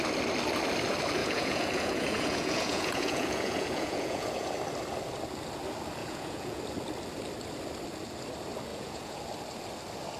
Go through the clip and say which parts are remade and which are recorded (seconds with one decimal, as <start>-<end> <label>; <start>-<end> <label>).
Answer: 0.0-1.2 recorded; 1.2-4.5 remade; 4.5-6.0 recorded; 6.0-6.6 remade; 6.6-8.7 recorded; 8.7-9.2 remade; 9.2-10.2 recorded